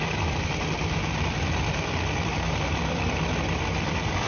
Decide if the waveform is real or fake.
fake